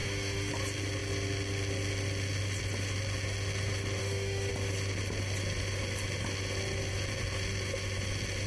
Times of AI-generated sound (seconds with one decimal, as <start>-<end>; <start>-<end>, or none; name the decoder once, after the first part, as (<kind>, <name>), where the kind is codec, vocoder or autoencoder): 0.0-0.5 (autoencoder, DAC-VAE); 4.0-4.5